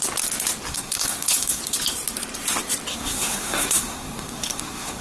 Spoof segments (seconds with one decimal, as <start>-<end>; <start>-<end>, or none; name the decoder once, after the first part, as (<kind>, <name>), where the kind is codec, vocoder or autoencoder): 0.7-1.6 (codec, SNAC); 2.9-5.0

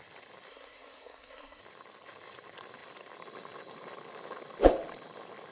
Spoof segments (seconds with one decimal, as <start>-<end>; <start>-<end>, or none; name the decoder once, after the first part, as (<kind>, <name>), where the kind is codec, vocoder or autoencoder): 0.5-1.6 (codec, SNAC)

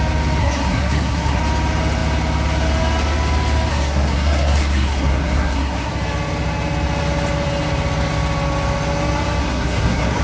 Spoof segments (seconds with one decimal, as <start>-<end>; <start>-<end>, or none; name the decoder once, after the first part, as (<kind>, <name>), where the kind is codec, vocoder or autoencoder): 0.4-1.4 (codec, SNAC); 3.7-5.9; 9.4-10.2

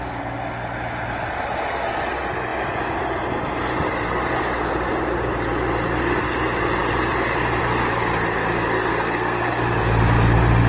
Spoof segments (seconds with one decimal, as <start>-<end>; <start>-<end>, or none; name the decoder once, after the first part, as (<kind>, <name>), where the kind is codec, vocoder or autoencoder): 8.9-9.4 (codec, SNAC)

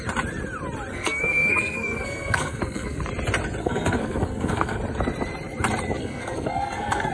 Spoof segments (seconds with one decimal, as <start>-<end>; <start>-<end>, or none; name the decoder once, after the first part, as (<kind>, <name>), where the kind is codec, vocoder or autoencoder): 0.9-3.0 (codec, SNAC); 3.6-4.8; 6.0-7.1

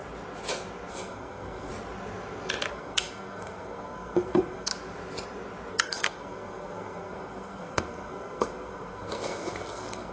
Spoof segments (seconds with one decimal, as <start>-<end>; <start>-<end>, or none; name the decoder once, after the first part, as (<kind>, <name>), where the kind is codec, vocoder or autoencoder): 0.9-1.7 (codec, SNAC); 2.7-4.7; 5.7-10.1

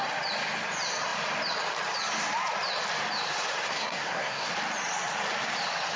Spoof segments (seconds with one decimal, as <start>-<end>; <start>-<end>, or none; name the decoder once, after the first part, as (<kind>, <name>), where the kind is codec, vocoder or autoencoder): 3.7-4.5 (codec, SNAC)

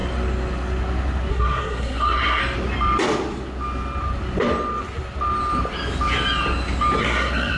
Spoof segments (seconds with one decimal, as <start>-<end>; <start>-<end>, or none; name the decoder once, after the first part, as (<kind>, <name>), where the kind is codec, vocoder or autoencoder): 1.3-2.4 (codec, SNAC); 7.0-7.6